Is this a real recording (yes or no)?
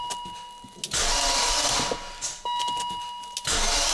yes